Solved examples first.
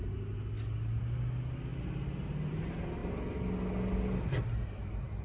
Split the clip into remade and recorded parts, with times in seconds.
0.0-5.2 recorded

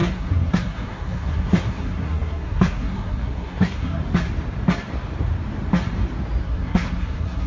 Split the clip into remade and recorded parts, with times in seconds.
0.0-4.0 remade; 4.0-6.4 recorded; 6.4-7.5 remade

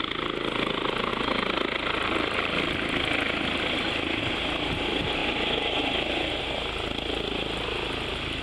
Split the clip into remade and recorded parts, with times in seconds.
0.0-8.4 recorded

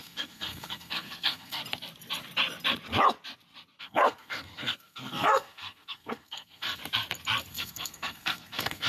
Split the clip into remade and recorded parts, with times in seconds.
0.0-1.6 remade; 1.6-3.8 recorded; 3.8-6.8 remade; 6.8-7.5 recorded; 7.5-8.9 remade

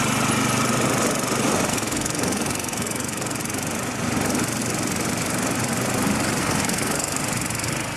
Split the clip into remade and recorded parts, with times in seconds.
0.0-1.7 recorded; 1.7-3.4 remade; 3.4-6.4 recorded; 6.4-7.2 remade; 7.2-8.0 recorded

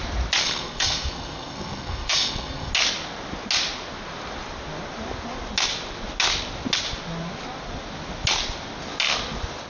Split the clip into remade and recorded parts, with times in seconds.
0.0-0.4 recorded; 0.4-2.7 remade; 2.7-9.7 recorded

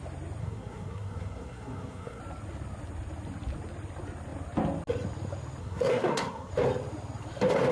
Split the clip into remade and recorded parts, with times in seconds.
0.0-0.4 recorded; 0.4-2.2 remade; 2.2-5.6 recorded; 5.6-6.5 remade; 6.5-7.7 recorded

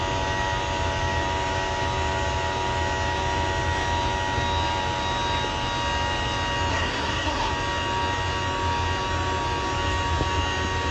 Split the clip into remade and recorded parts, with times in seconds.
0.0-6.7 recorded; 6.7-7.5 remade; 7.5-10.9 recorded